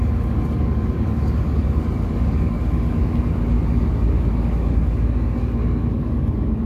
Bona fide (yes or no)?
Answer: no